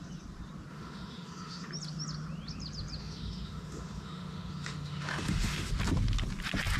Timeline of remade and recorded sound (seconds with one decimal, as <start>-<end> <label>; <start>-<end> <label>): 0.0-0.7 recorded; 0.7-1.7 remade; 1.7-3.0 recorded; 3.0-5.7 remade; 5.7-6.8 recorded